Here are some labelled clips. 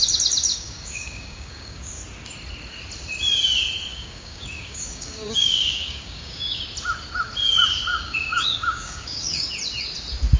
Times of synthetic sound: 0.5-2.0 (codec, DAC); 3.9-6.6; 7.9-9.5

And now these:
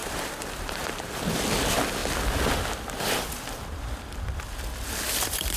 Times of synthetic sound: 0.0-0.9 (vocoder, BigVGAN v2)